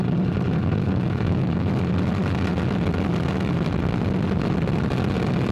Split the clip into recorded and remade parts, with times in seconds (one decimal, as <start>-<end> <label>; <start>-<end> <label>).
0.0-0.6 recorded; 0.6-1.7 remade; 1.7-5.5 recorded